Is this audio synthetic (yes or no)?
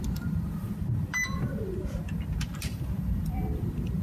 no